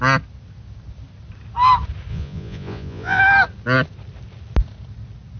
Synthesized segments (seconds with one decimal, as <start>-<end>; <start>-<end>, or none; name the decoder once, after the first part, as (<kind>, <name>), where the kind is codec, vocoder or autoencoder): 2.1-3.2 (vocoder, Vocos)